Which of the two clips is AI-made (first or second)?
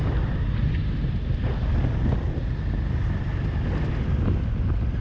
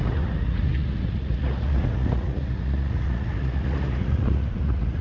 second